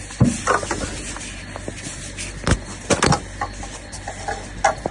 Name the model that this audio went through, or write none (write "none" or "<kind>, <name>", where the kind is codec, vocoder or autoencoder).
none